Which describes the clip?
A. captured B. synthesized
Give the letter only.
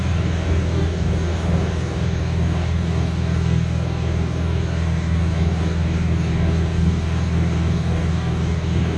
B